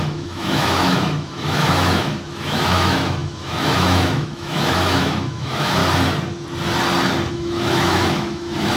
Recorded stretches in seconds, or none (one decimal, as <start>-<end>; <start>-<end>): 5.8-7.3